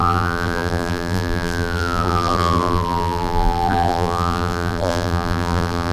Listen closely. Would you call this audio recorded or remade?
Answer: remade